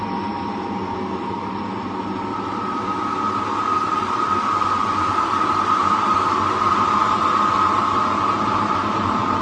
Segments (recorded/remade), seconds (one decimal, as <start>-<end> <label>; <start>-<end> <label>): 0.0-4.8 recorded; 4.8-5.6 remade; 5.6-9.4 recorded